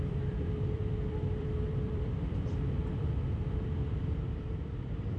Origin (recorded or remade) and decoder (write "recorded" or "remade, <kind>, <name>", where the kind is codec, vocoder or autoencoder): remade, vocoder, BigVGAN v2